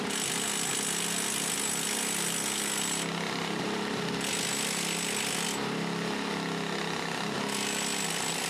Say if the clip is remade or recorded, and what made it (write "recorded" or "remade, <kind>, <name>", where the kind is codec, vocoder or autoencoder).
recorded